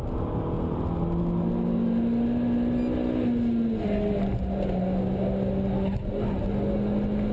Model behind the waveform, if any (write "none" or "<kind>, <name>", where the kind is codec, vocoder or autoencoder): none